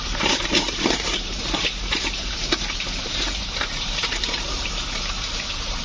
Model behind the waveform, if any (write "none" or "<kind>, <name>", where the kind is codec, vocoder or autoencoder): vocoder, BigVGAN v2